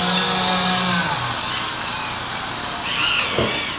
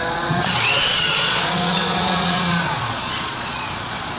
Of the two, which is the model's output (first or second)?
second